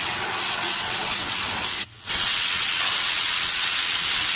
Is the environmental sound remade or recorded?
remade